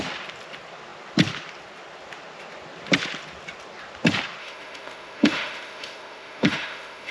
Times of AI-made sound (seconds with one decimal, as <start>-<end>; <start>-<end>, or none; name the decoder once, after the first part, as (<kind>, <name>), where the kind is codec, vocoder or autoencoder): 4.4-7.1 (autoencoder, DAC-VAE)